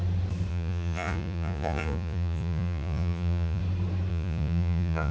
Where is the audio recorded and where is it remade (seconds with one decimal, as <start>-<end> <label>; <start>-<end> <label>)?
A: 0.0-0.5 recorded; 0.5-3.6 remade; 3.6-4.1 recorded; 4.1-5.1 remade

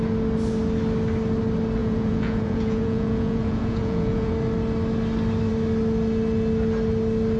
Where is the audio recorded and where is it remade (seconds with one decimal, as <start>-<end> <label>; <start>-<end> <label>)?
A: 0.0-1.8 recorded; 1.8-4.3 remade; 4.3-7.4 recorded

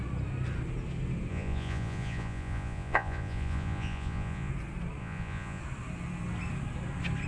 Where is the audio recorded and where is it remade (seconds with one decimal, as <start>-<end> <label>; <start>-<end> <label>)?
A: 0.0-1.3 recorded; 1.3-4.5 remade; 4.5-5.0 recorded; 5.0-5.6 remade; 5.6-7.3 recorded

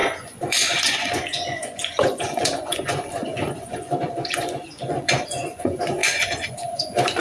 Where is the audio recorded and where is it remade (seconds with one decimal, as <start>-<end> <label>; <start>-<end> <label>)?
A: 0.0-7.2 remade

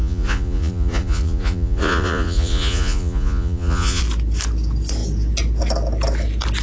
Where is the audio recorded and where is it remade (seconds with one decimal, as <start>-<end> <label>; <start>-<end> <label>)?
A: 0.0-4.0 remade; 4.0-6.6 recorded

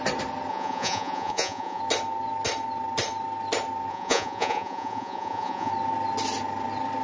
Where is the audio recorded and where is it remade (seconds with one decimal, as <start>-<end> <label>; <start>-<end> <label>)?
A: 0.0-0.5 recorded; 0.5-1.8 remade; 1.8-3.9 recorded; 3.9-5.7 remade; 5.7-7.0 recorded

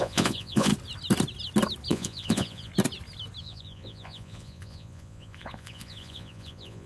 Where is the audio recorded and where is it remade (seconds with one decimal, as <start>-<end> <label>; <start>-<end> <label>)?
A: 0.0-0.7 remade; 0.7-1.9 recorded; 1.9-2.7 remade; 2.7-3.4 recorded; 3.4-6.9 remade